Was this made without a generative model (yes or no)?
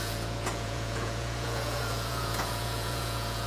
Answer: no